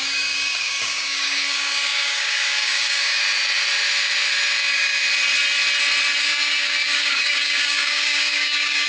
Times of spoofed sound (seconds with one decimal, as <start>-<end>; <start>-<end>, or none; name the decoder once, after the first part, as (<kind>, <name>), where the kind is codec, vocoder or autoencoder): 0.0-3.2 (codec, DAC); 4.6-5.0; 6.2-8.9